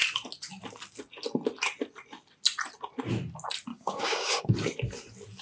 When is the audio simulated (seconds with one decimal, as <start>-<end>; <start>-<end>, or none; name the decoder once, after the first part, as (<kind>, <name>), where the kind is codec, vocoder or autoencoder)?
3.7-4.4 (codec, DAC)